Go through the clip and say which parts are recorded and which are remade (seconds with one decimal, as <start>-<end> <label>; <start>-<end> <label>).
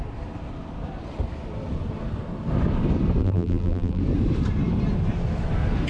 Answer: 0.0-3.2 recorded; 3.2-4.0 remade; 4.0-5.9 recorded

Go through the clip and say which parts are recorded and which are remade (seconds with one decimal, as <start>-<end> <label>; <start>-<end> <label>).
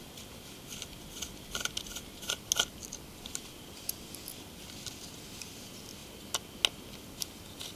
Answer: 0.0-7.8 recorded